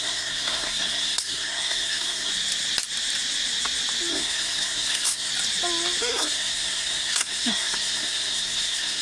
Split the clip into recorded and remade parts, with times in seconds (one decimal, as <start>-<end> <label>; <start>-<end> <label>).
0.0-2.3 remade; 2.3-4.1 recorded; 4.1-5.3 remade; 5.3-6.0 recorded; 6.0-9.0 remade